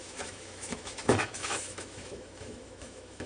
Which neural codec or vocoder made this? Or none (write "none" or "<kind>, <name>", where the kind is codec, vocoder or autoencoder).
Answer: autoencoder, DAC-VAE